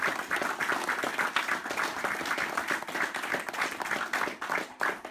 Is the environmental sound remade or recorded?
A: recorded